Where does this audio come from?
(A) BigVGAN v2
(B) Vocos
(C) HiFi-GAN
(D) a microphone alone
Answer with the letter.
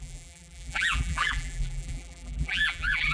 A